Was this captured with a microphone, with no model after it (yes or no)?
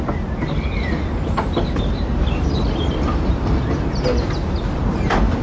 yes